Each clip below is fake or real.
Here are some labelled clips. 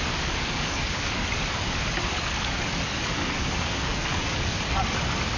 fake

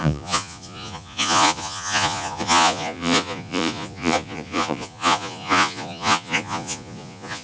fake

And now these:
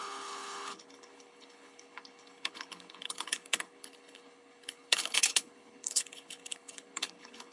fake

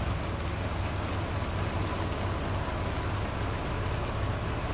real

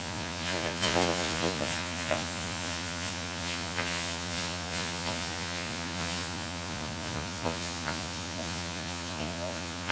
fake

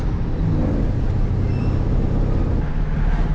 real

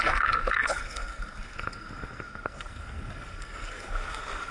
fake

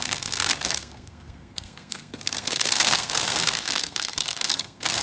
fake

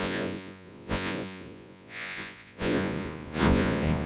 fake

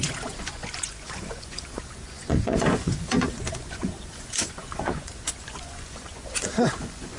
fake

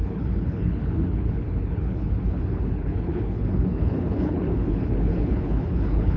fake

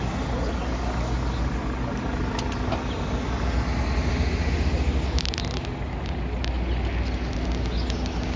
real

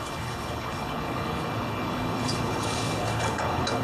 fake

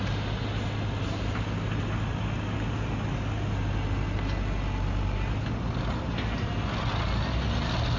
real